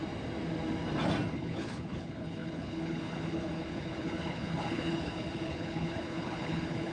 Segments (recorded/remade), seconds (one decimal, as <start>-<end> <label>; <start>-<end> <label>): 0.0-1.3 recorded; 1.3-6.9 remade

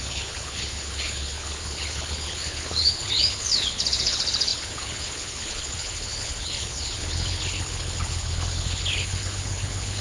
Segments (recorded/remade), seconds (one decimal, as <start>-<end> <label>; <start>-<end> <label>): 0.0-10.0 remade

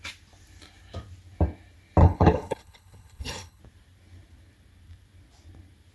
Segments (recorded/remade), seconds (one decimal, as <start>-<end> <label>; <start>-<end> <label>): 0.0-2.0 recorded; 2.0-3.6 remade; 3.6-5.9 recorded